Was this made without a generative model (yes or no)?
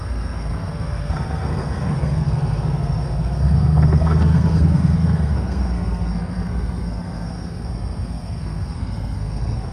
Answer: no